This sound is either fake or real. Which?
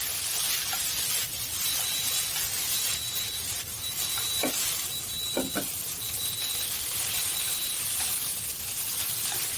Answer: real